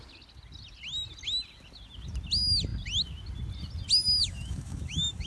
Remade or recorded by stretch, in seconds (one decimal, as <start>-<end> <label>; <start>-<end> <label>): 0.0-4.2 recorded; 4.2-5.3 remade